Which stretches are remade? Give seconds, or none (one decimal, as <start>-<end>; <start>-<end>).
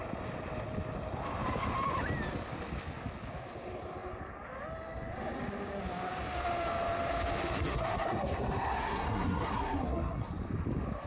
7.4-10.3